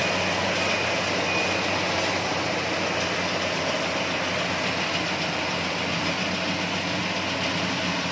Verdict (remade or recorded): recorded